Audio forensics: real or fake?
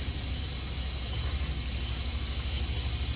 real